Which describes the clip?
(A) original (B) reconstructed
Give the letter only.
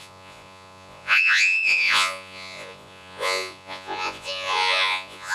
B